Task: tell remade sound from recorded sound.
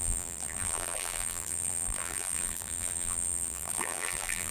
remade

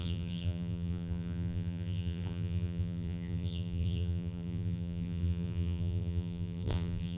remade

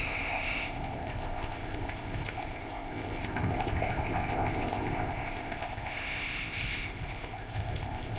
remade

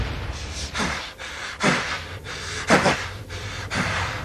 remade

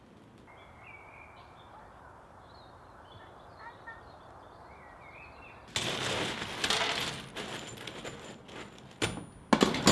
recorded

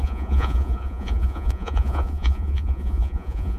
remade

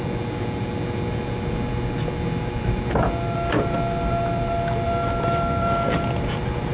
recorded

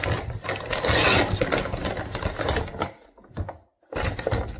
recorded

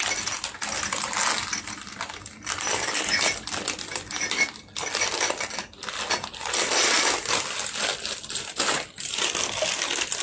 recorded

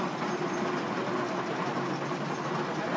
recorded